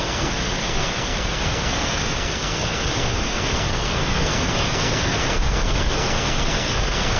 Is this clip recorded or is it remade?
remade